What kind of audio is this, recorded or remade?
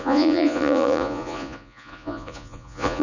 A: remade